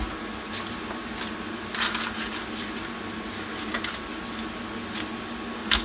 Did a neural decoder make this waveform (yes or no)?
no